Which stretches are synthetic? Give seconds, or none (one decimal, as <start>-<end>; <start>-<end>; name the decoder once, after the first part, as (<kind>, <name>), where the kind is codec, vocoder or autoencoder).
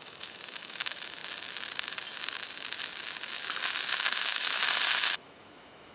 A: 0.0-1.2 (autoencoder, DAC-VAE); 4.0-4.6; 5.2-5.9